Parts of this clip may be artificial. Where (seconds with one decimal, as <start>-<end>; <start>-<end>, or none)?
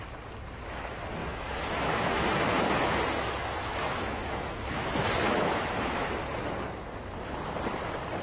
1.2-6.1